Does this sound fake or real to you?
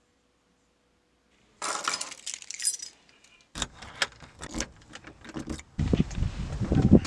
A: real